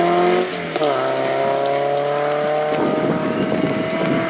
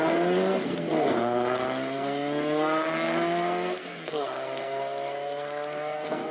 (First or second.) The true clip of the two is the first